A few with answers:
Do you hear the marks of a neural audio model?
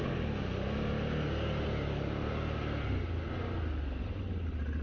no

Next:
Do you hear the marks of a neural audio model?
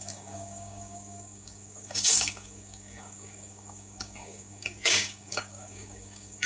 yes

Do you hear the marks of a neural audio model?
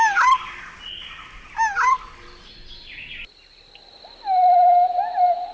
no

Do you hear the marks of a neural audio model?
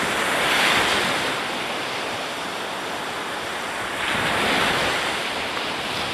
no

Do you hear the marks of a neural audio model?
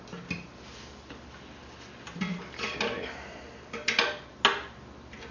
no